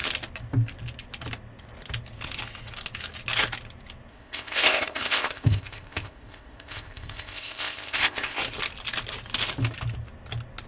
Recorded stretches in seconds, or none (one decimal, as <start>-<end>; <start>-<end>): 0.0-4.1; 8.4-10.7

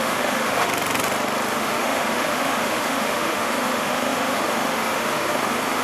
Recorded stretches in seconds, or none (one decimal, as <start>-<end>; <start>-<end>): 0.7-1.5

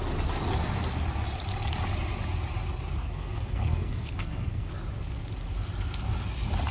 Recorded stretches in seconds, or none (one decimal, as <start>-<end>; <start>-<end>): 0.0-3.0; 4.7-6.7

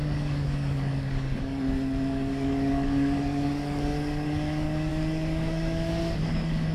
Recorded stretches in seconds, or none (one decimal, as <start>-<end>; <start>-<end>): none

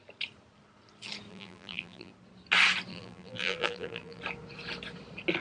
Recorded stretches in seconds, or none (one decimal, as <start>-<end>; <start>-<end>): 0.0-1.3; 2.1-2.9; 4.2-5.4